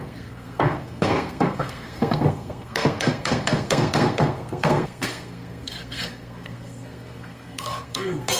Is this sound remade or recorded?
remade